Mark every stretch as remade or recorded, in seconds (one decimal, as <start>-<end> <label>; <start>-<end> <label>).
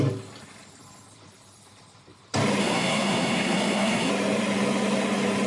0.0-2.6 recorded; 2.6-4.1 remade; 4.1-5.5 recorded